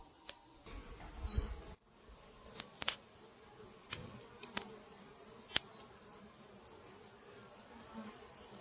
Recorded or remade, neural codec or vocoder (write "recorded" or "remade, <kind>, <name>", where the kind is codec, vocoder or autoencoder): recorded